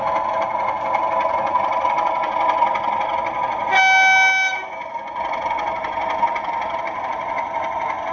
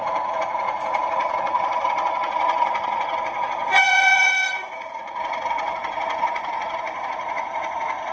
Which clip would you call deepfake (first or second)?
second